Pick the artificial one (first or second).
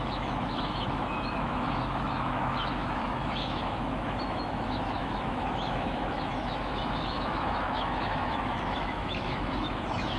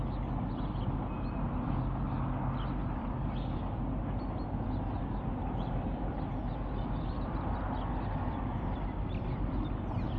first